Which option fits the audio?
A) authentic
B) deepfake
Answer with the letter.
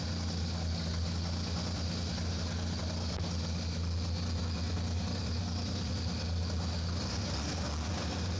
A